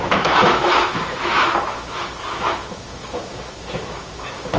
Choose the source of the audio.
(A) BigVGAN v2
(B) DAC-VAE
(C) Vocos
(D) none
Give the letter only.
B